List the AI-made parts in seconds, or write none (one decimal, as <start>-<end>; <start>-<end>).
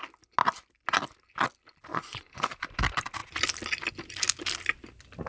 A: 1.9-2.4